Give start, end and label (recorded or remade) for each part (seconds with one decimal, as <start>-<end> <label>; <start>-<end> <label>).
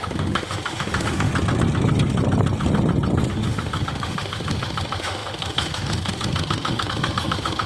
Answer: 0.0-1.3 remade; 1.3-3.3 recorded; 3.3-7.7 remade